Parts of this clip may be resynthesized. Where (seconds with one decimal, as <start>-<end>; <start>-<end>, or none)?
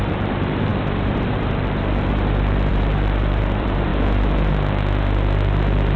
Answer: 0.0-3.9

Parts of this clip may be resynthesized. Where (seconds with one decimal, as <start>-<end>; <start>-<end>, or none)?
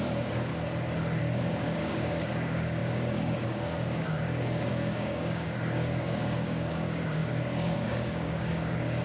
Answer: 0.0-0.5; 1.2-9.0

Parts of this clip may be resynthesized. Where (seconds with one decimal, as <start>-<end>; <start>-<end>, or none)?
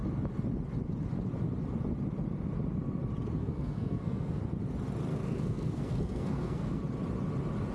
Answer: 3.4-4.4; 5.1-6.8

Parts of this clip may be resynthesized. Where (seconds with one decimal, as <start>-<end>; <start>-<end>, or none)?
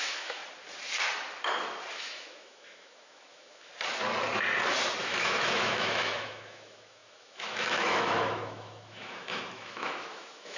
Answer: 0.0-0.4; 1.9-3.7; 5.0-10.6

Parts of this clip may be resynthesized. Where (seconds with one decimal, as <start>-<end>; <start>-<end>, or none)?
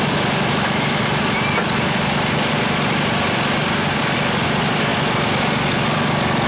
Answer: none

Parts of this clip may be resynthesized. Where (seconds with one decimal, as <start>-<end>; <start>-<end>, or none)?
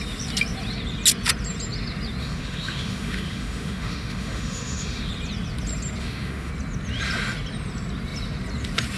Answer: 2.2-5.1; 6.0-6.5